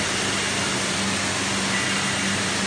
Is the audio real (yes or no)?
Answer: yes